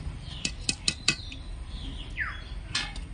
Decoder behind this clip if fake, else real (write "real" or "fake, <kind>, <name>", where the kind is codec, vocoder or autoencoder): fake, vocoder, BigVGAN v2